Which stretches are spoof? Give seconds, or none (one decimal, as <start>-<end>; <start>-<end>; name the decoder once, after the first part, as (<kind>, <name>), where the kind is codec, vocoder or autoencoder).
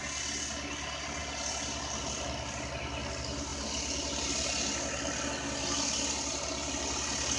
1.2-2.7 (vocoder, BigVGAN v2); 3.5-4.3